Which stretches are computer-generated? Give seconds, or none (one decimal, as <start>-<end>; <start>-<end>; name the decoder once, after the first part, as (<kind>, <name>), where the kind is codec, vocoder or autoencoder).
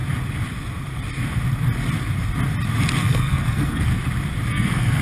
3.0-3.9 (codec, SNAC); 4.5-5.0